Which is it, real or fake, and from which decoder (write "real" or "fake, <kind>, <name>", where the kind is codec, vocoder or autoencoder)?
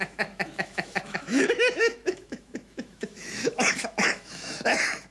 fake, autoencoder, DAC-VAE